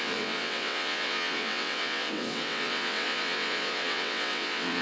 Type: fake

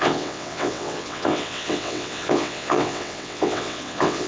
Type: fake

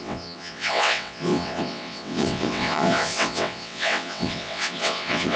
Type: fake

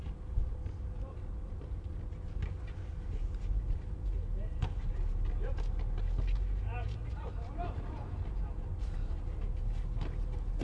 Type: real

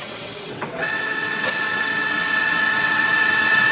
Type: fake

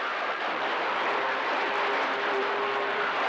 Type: real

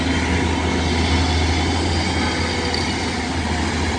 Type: real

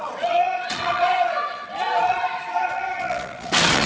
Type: fake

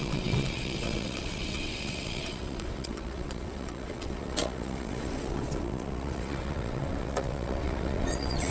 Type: fake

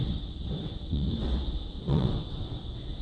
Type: fake